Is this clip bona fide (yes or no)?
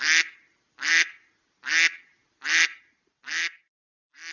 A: yes